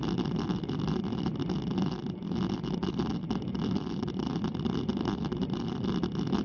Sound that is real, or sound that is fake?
real